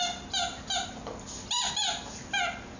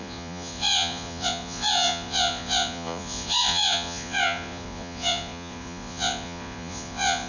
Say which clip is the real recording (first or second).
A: first